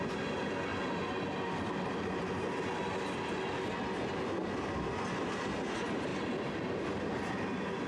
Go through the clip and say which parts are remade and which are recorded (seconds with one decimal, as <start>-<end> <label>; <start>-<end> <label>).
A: 0.0-7.9 recorded